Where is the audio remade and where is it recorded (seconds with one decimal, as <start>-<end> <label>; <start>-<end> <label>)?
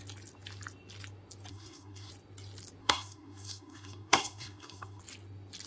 0.0-1.5 recorded; 1.5-2.1 remade; 2.1-2.8 recorded; 2.8-5.0 remade; 5.0-5.7 recorded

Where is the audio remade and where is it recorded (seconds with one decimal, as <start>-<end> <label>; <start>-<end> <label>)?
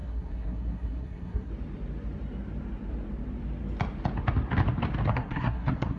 0.0-1.5 remade; 1.5-5.1 recorded; 5.1-6.0 remade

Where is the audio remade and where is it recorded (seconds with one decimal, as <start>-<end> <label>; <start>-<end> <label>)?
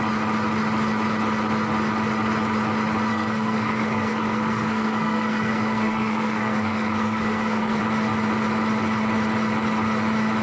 0.0-3.1 recorded; 3.1-7.8 remade; 7.8-10.4 recorded